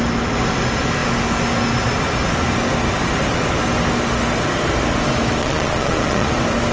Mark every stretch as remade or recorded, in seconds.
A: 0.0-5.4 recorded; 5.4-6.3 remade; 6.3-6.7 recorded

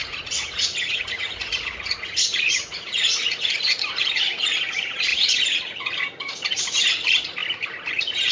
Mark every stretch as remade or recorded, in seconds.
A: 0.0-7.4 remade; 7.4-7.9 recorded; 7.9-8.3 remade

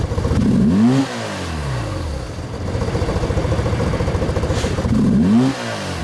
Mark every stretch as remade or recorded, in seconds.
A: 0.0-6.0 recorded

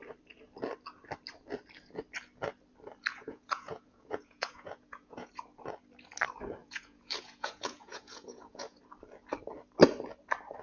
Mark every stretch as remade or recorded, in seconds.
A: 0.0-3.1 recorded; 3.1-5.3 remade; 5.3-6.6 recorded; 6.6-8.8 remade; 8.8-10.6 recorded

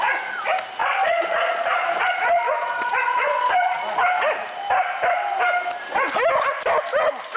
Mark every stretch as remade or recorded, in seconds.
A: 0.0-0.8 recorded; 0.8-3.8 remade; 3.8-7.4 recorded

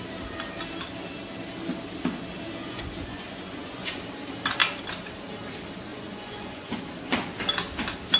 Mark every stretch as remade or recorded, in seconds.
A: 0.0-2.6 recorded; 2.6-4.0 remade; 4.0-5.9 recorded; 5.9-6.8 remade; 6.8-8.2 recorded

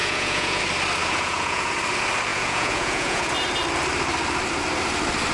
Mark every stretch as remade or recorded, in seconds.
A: 0.0-0.6 remade; 0.6-1.0 recorded; 1.0-1.7 remade; 1.7-2.3 recorded; 2.3-3.3 remade; 3.3-5.3 recorded